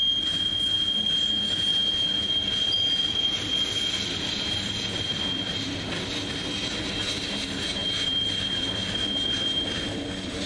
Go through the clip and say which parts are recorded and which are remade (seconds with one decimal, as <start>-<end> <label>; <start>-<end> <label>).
0.0-10.5 recorded